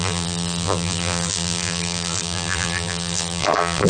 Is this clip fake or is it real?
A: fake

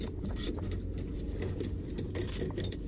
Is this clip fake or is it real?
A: real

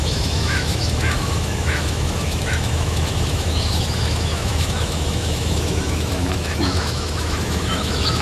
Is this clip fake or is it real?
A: fake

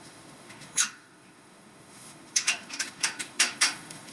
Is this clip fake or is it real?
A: fake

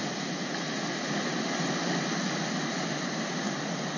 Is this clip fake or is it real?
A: real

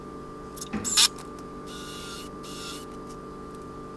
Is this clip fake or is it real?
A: real